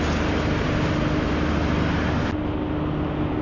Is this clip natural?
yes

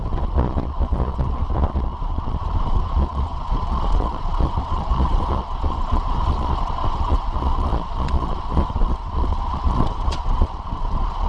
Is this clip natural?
no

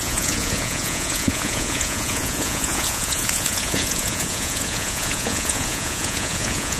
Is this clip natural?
no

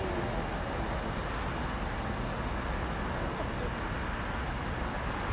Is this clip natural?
yes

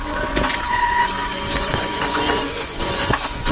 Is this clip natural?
no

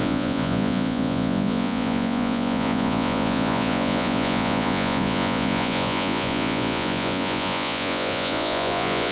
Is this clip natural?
no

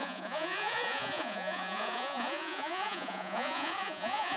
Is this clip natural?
no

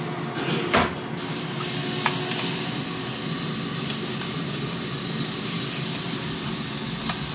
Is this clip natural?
yes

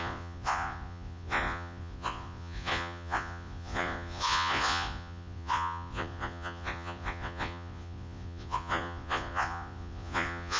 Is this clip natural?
no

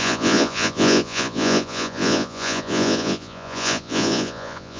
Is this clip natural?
no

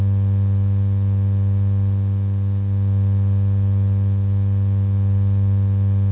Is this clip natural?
yes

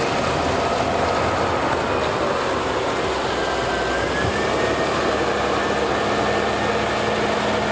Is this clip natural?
yes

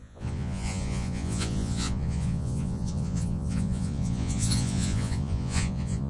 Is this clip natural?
no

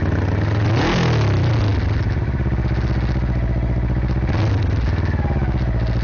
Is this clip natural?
yes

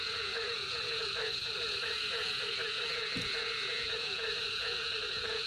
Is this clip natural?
no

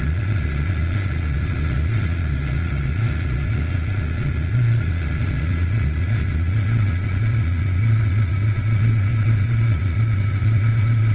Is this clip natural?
no